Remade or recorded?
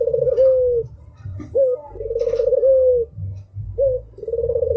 recorded